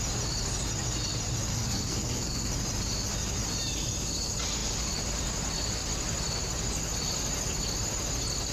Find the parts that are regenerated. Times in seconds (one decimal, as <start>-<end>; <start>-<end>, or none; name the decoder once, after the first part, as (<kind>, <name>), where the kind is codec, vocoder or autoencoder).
1.5-2.5 (codec, SNAC)